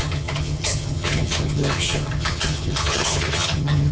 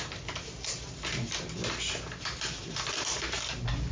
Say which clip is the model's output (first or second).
first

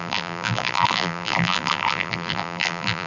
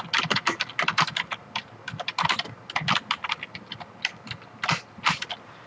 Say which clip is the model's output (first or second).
first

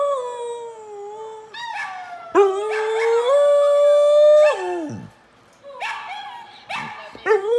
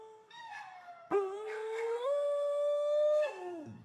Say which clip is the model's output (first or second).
second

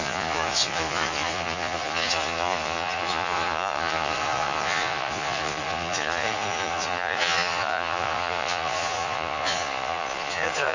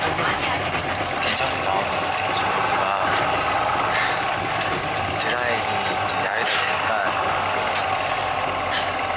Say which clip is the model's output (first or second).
first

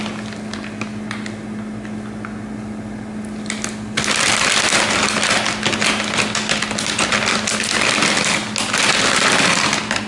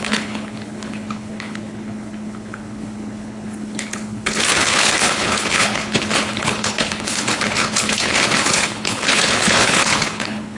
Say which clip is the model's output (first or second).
second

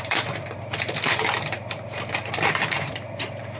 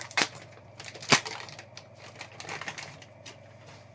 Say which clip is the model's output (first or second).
first